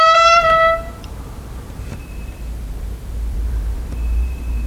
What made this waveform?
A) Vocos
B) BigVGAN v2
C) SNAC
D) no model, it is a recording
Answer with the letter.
B